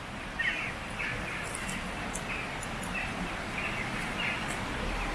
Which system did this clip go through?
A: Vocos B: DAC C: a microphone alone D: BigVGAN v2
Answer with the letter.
C